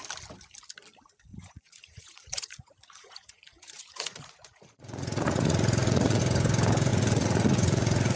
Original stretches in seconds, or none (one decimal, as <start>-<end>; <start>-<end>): 0.0-1.3; 6.2-6.9